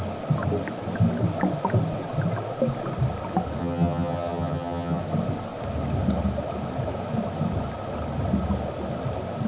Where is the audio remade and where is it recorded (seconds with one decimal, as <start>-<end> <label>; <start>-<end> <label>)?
0.0-3.6 recorded; 3.6-5.0 remade; 5.0-9.5 recorded